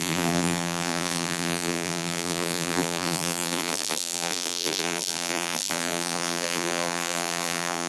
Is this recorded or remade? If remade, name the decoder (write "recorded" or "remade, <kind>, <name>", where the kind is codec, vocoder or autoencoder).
remade, vocoder, BigVGAN v2